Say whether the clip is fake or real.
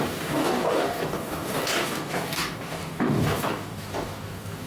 fake